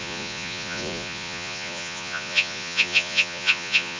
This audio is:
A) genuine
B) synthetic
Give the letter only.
B